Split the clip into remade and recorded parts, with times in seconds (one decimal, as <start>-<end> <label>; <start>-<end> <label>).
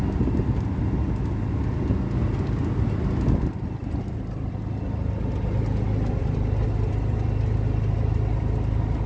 0.0-9.1 recorded